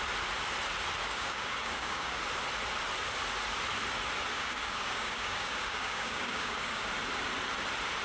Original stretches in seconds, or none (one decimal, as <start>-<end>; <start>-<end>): 0.0-1.0; 2.2-4.3; 6.9-8.0

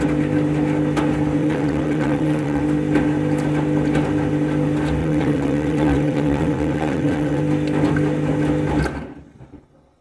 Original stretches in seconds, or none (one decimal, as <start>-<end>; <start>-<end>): 0.0-1.4; 2.6-5.0; 7.4-10.0

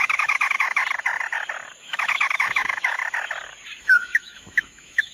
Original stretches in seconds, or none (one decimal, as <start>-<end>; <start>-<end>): 0.8-1.8; 3.0-3.8

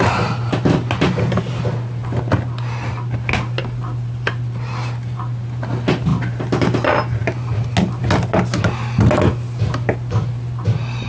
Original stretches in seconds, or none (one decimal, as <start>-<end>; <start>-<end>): 0.0-11.1

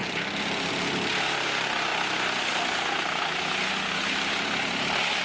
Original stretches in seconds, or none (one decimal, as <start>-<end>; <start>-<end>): 0.0-5.2